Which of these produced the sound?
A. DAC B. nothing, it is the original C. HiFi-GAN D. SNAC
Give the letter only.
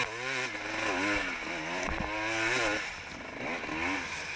B